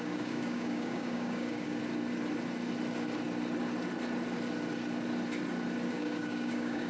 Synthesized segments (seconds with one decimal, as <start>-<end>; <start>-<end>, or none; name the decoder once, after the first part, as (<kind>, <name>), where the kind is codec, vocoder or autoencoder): 0.0-1.8 (codec, DAC); 5.9-6.9